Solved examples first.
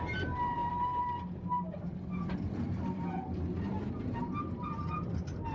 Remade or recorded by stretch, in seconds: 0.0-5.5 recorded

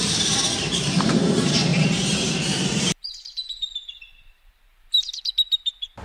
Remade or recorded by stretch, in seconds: 0.0-6.0 remade

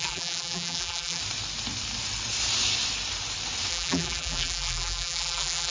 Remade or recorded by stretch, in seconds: 0.0-1.2 remade; 1.2-3.7 recorded; 3.7-5.7 remade

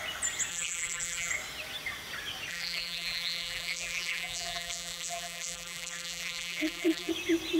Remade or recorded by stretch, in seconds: 0.0-0.5 recorded; 0.5-1.3 remade; 1.3-2.5 recorded; 2.5-7.1 remade; 7.1-7.6 recorded

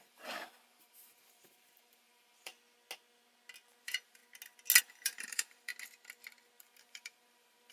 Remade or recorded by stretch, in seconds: 0.0-2.5 remade; 2.5-3.8 recorded; 3.8-4.2 remade; 4.2-4.8 recorded; 4.8-5.7 remade; 5.7-6.6 recorded; 6.6-7.7 remade

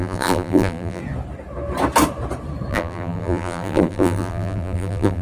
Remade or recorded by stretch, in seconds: 0.0-1.0 remade; 1.0-2.7 recorded; 2.7-5.2 remade

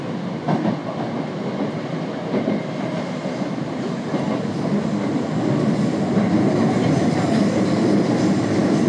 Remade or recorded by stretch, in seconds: 0.0-8.9 recorded

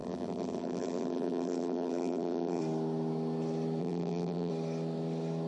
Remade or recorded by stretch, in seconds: 0.0-2.6 remade; 2.6-3.8 recorded; 3.8-4.5 remade; 4.5-5.5 recorded